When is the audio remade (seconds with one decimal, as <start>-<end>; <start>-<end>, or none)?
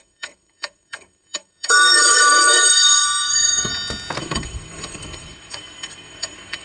0.0-3.7; 4.2-6.6